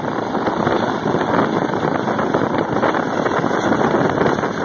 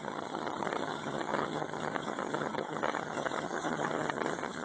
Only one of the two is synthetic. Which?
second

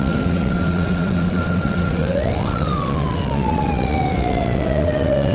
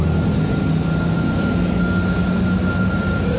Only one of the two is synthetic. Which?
first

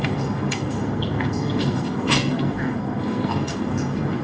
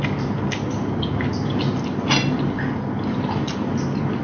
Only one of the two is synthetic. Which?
first